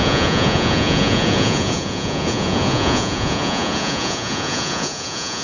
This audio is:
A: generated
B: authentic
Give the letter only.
A